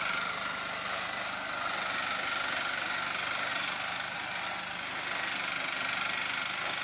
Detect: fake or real real